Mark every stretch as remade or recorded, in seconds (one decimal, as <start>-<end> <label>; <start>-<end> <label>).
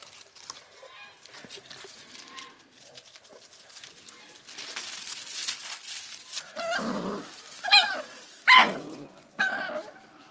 0.0-8.6 recorded; 8.6-9.4 remade; 9.4-10.3 recorded